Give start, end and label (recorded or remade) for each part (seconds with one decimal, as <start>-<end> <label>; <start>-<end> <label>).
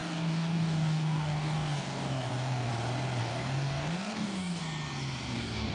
0.0-2.7 remade; 2.7-3.2 recorded; 3.2-4.6 remade; 4.6-5.3 recorded; 5.3-5.7 remade